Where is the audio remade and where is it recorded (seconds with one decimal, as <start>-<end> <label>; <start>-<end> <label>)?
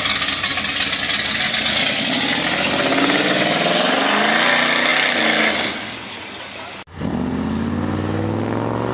0.0-8.9 recorded